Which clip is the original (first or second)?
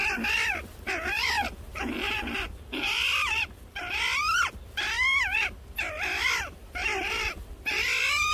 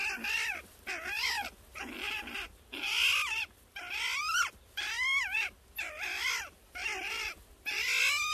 second